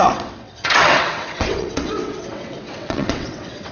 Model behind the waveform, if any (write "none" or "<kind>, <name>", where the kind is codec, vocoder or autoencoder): vocoder, WaveNeXt